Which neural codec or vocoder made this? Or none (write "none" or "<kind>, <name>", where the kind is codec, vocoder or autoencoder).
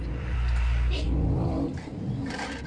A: none